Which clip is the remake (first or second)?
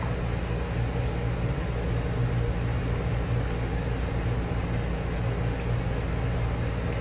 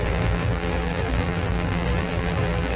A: second